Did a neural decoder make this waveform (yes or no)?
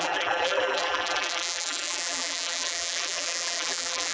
yes